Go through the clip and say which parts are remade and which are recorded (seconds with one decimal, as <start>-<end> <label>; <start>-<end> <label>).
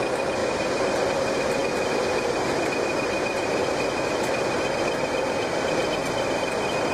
0.0-6.9 recorded